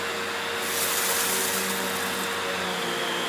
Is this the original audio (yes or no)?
yes